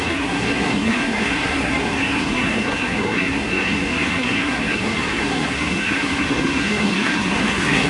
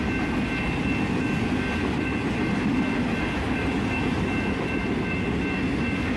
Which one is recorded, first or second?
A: second